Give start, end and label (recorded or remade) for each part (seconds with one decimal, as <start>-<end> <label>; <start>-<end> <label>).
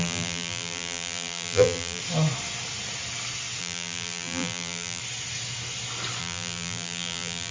0.0-2.0 remade; 2.0-3.6 recorded; 3.6-5.0 remade; 5.0-6.2 recorded; 6.2-7.5 remade